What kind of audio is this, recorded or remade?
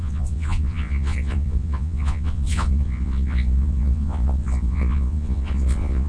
remade